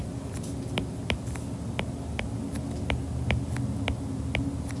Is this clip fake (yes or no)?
no